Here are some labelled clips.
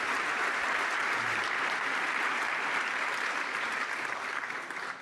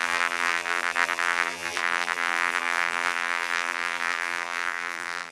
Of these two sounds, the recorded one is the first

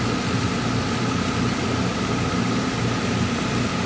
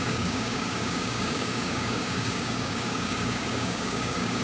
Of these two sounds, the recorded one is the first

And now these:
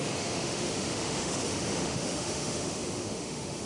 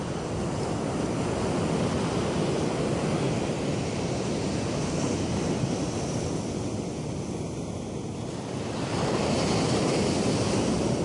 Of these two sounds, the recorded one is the second